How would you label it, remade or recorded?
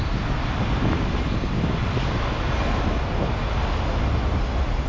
recorded